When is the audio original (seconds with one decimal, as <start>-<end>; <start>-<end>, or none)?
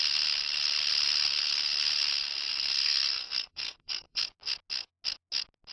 0.0-2.5; 4.2-5.7